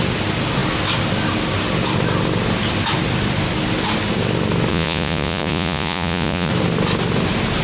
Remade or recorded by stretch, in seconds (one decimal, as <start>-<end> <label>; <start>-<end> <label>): 0.0-4.7 recorded; 4.7-6.5 remade; 6.5-7.6 recorded